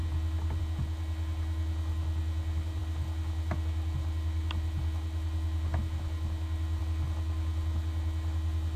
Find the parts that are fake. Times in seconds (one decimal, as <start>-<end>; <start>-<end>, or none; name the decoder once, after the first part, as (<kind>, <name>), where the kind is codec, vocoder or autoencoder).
none